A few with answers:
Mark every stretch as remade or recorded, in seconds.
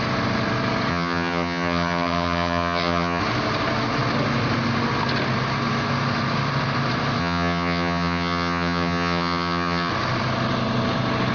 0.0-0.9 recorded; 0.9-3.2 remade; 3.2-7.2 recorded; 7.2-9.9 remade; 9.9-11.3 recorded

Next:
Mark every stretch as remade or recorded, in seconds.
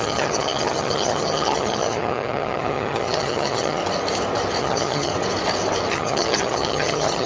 0.0-3.8 remade; 3.8-4.6 recorded; 4.6-5.1 remade; 5.1-5.9 recorded; 5.9-7.3 remade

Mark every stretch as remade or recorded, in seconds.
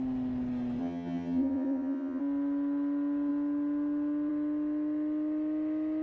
0.0-0.8 recorded; 0.8-2.2 remade; 2.2-6.0 recorded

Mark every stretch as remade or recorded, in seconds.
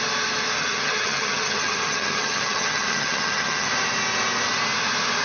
0.0-0.6 recorded; 0.6-3.7 remade; 3.7-5.2 recorded